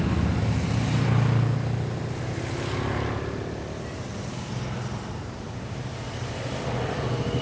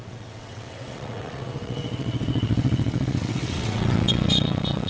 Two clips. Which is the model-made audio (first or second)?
second